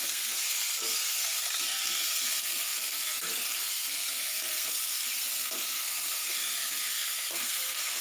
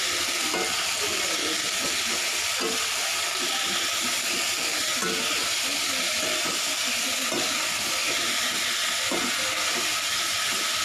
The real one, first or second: second